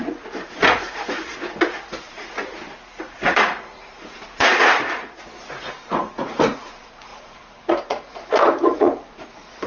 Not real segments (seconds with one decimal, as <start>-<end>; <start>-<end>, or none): 0.0-9.7